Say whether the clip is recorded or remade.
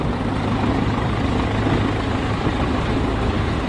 recorded